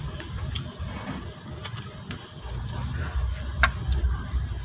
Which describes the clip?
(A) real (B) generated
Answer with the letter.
A